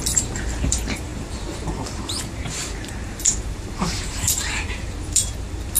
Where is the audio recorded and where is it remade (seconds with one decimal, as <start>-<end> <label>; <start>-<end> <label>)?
0.0-5.8 remade